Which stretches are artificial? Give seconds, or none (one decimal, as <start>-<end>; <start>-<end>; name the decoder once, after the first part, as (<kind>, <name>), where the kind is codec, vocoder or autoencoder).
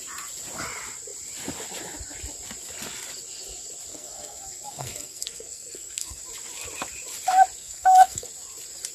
3.9-6.2 (codec, SNAC); 7.6-8.3